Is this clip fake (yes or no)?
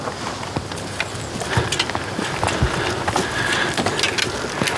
no